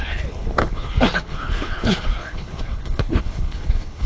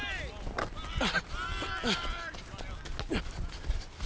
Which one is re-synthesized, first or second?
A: first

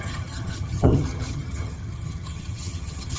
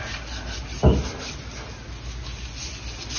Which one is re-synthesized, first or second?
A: first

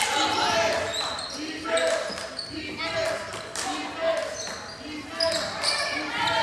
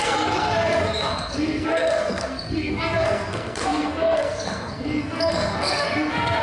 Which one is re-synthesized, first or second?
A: second